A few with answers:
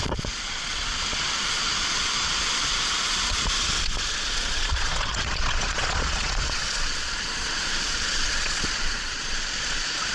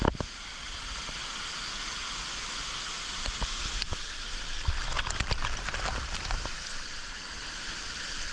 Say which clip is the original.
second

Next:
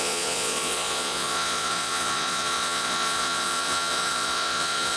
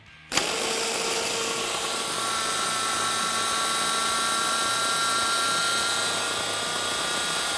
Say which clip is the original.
second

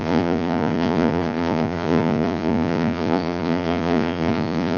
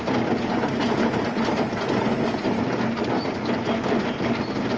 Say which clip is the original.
second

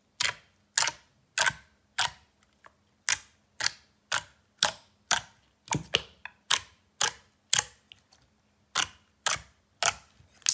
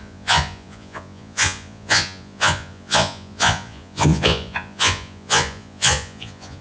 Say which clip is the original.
first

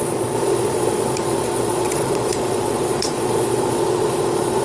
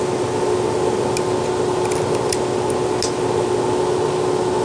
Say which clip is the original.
second